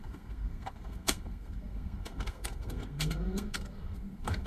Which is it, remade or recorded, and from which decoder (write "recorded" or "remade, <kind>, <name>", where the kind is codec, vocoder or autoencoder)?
remade, codec, SNAC